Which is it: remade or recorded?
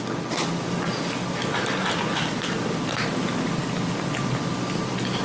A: recorded